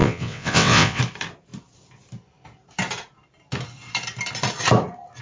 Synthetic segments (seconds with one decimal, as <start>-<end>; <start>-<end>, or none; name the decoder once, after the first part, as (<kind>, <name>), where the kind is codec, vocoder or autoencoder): 0.0-1.0 (vocoder, WaveNeXt)